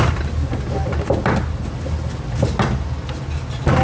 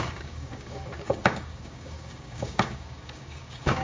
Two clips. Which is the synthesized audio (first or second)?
second